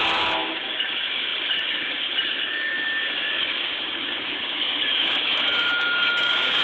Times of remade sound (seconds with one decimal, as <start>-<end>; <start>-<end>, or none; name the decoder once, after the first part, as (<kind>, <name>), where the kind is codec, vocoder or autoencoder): 0.0-6.6 (codec, DAC)